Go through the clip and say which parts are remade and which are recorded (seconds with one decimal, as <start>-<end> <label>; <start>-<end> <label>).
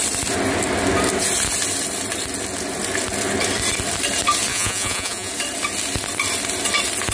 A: 0.0-4.5 recorded; 4.5-5.3 remade; 5.3-7.1 recorded